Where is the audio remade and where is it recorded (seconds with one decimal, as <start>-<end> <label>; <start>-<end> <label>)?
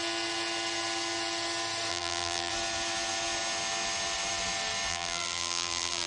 0.0-1.9 recorded; 1.9-2.5 remade; 2.5-4.9 recorded; 4.9-6.1 remade